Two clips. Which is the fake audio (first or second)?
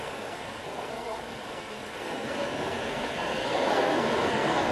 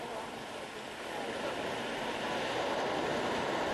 first